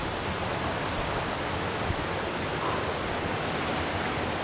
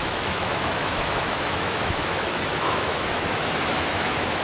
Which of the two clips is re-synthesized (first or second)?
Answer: second